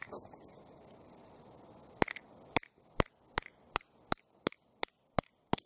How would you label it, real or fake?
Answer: real